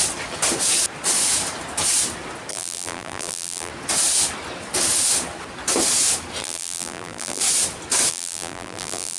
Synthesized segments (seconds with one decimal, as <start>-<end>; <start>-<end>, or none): 2.5-3.7; 6.4-7.4; 8.1-9.2